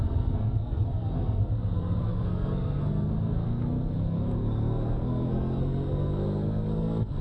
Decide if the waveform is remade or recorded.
remade